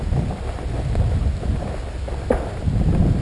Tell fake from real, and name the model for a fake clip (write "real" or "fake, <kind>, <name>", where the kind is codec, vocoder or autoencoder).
real